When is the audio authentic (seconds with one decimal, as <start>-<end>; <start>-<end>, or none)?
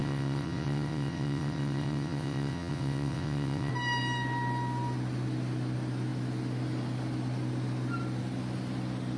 3.7-9.2